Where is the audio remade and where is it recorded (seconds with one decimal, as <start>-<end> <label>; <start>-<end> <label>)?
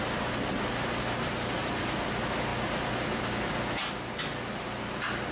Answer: 0.0-1.6 recorded; 1.6-2.1 remade; 2.1-5.3 recorded